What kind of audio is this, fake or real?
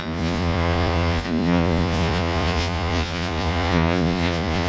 fake